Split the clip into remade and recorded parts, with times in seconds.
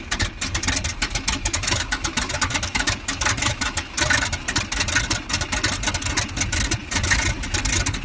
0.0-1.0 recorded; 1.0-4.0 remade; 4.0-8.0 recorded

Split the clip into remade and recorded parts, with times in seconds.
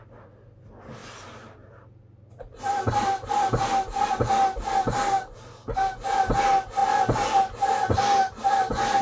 0.0-9.0 recorded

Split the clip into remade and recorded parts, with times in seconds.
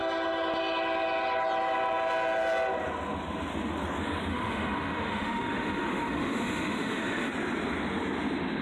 0.0-4.3 recorded; 4.3-7.3 remade; 7.3-8.6 recorded